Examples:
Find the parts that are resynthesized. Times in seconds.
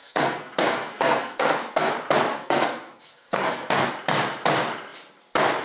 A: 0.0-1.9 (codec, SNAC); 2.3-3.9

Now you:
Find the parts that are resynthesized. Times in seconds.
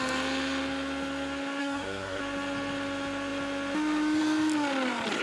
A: 1.6-2.2 (codec, SNAC)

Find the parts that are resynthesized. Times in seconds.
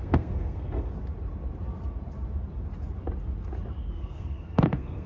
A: 0.0-0.9 (codec, SNAC); 3.9-5.1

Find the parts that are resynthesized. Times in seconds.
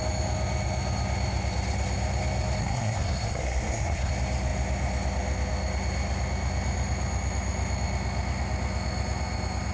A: 2.6-4.1 (codec, SNAC)